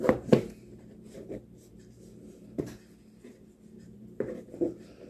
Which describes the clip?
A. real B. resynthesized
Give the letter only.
B